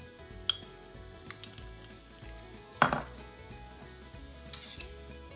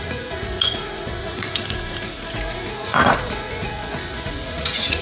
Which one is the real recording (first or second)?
first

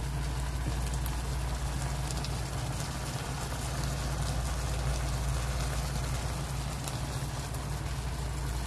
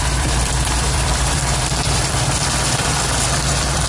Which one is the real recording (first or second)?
first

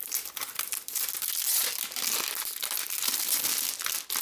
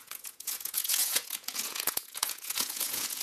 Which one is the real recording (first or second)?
first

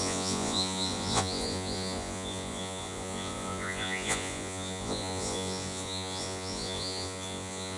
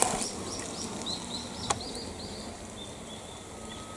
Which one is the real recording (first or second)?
second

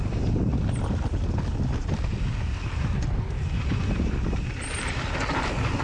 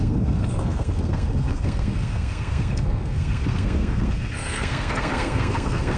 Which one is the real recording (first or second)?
first